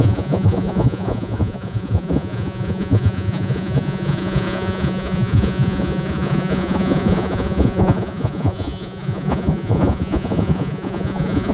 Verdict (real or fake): fake